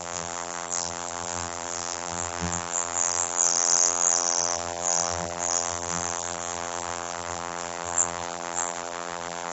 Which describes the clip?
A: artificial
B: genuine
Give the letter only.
A